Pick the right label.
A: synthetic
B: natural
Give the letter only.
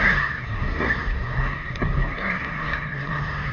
A